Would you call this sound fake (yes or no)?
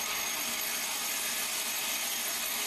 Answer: no